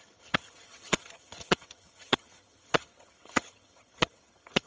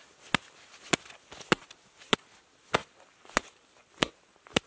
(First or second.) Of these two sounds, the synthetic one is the first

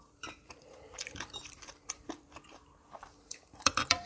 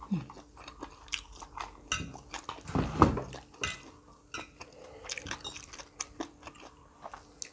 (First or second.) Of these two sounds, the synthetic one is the first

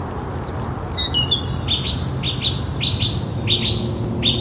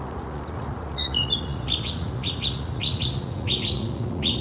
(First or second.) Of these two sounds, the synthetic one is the second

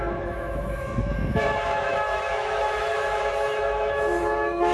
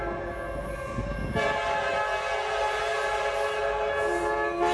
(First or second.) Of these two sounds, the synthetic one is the first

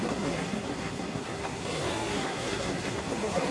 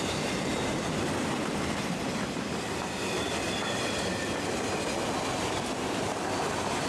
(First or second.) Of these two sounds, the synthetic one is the first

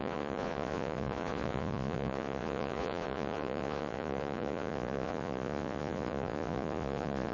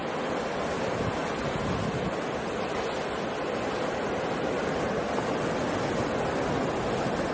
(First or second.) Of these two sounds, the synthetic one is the first